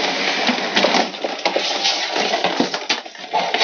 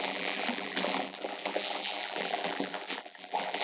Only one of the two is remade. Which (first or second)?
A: second